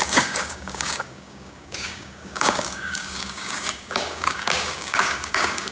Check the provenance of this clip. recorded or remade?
remade